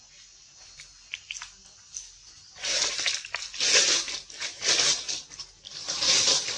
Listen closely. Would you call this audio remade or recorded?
recorded